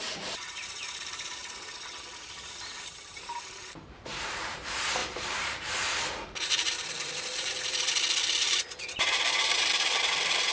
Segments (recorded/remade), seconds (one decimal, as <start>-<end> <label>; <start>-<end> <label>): 0.0-1.4 remade; 1.4-2.2 recorded; 2.2-10.5 remade